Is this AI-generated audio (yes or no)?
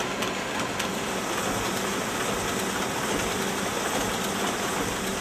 no